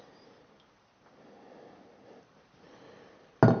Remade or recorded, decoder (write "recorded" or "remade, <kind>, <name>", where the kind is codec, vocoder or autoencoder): recorded